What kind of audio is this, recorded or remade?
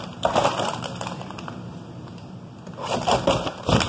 recorded